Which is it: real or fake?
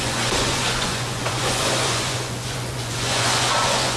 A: fake